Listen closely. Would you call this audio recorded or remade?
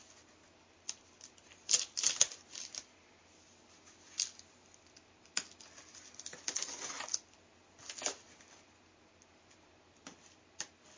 recorded